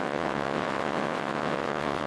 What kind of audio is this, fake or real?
fake